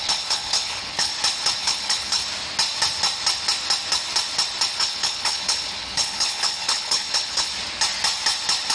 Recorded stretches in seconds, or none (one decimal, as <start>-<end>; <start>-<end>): 1.1-1.6; 2.2-4.8; 7.5-8.7